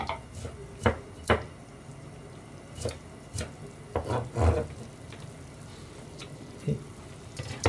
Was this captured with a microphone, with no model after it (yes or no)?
yes